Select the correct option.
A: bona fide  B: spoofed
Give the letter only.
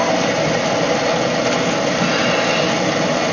A